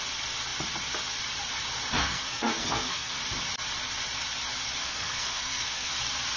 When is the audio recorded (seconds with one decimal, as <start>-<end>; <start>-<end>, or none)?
0.0-2.0; 3.2-4.8; 6.0-6.4